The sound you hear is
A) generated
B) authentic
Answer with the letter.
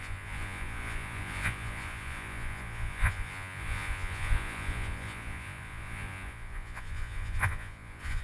A